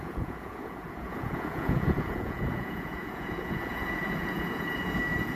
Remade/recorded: remade